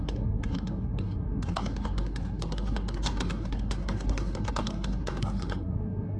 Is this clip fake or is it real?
fake